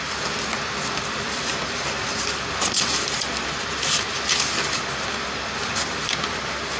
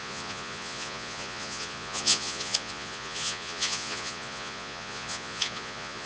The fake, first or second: second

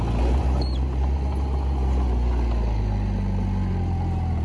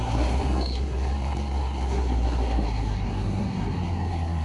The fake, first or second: second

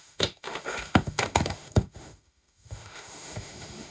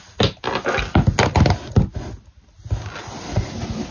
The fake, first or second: first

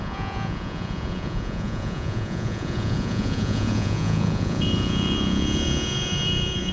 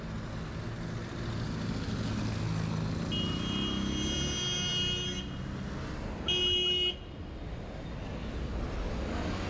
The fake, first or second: first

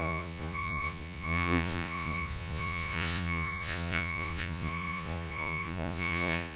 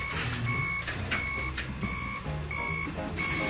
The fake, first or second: first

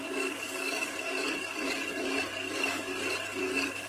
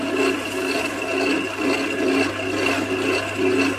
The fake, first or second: first